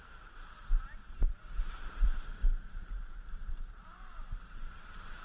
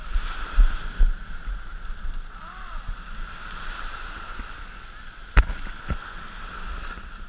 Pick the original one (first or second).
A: second